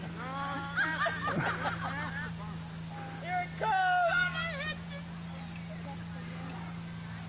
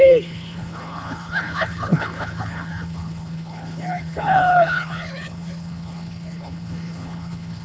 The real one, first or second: first